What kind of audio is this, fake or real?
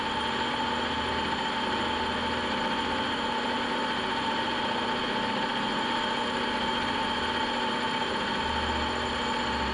real